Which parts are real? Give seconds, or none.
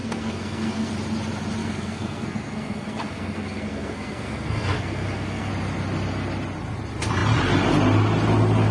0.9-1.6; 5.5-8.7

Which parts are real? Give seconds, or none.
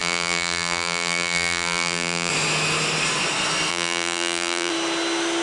2.3-3.7; 4.7-5.4